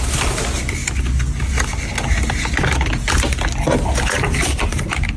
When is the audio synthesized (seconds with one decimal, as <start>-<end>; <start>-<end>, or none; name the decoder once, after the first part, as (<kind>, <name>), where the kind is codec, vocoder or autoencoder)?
none

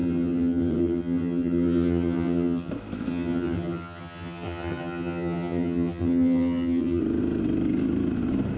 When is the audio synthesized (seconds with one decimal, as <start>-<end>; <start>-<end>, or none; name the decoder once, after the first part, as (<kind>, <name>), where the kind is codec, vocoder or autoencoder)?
0.0-2.7 (vocoder, HiFi-GAN); 3.1-7.0